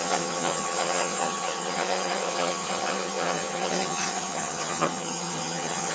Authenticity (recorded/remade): remade